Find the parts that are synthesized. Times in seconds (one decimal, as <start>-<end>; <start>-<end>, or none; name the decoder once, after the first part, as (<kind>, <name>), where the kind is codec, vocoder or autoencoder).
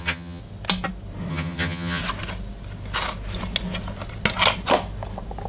0.0-0.4 (vocoder, HiFi-GAN); 1.3-2.0